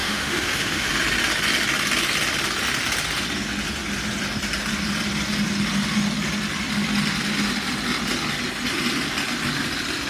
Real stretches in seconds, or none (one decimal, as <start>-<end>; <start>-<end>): 0.9-10.1